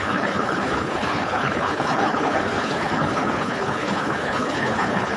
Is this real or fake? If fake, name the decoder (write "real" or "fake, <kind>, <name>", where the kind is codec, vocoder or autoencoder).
fake, codec, HILCodec